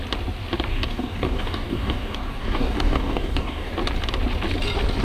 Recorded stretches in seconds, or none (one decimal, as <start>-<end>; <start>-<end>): 0.0-0.7; 3.7-5.0